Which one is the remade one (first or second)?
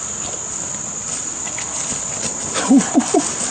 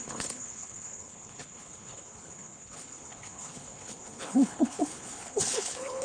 second